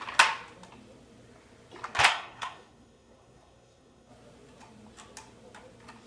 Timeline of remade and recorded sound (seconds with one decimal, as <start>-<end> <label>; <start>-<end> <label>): 0.0-2.1 recorded; 2.1-4.1 remade; 4.1-6.1 recorded